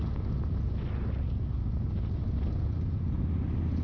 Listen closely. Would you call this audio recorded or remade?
recorded